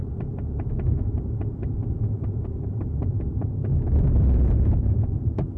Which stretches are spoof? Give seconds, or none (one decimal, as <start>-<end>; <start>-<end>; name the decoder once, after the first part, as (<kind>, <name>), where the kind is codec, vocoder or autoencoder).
0.0-3.7 (vocoder, BigVGAN v2); 4.6-5.6